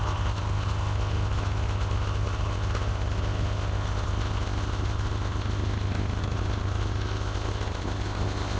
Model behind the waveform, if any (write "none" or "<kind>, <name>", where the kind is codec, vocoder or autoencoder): codec, ZipCodec